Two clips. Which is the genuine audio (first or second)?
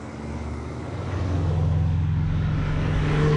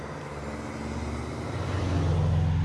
second